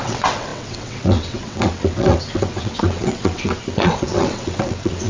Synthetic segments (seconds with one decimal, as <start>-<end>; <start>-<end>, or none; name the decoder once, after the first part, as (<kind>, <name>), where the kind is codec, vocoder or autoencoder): 0.0-5.1 (vocoder, WaveNeXt)